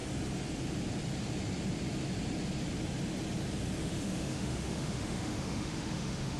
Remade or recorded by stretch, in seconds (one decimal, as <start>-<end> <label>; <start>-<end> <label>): 0.0-3.8 recorded; 3.8-6.4 remade